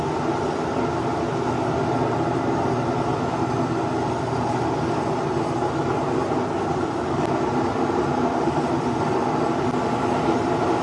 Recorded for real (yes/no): yes